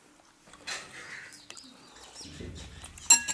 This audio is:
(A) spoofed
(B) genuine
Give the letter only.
B